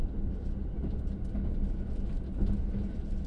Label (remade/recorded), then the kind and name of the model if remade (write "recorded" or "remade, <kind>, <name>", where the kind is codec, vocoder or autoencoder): recorded